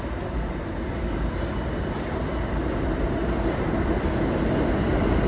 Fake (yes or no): no